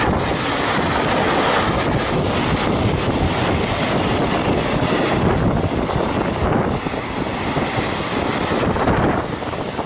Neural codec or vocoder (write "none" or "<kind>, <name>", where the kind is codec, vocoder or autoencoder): none